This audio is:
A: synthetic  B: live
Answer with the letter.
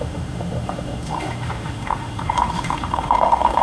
A